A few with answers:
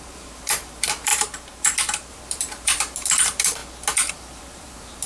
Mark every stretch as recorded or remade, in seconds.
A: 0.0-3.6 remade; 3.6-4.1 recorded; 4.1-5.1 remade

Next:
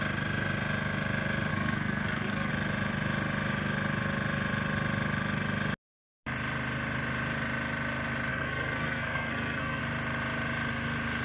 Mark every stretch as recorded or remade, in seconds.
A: 0.0-1.5 recorded; 1.5-2.5 remade; 2.5-8.3 recorded; 8.3-9.8 remade; 9.8-11.2 recorded

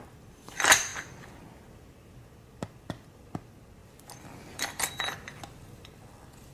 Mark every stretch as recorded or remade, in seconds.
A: 0.0-6.5 recorded

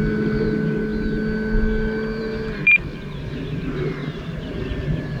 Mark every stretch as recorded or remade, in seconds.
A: 0.0-4.0 recorded; 4.0-4.6 remade; 4.6-5.2 recorded

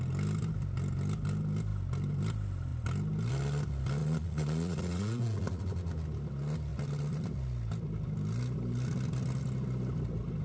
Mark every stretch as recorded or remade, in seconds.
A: 0.0-4.0 recorded; 4.0-5.6 remade; 5.6-10.4 recorded